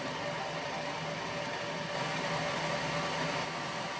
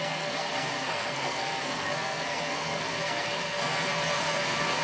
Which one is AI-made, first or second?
second